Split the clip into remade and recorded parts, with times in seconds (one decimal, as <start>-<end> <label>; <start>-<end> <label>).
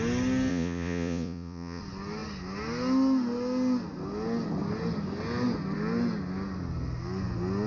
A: 0.0-0.5 recorded; 0.5-1.8 remade; 1.8-7.7 recorded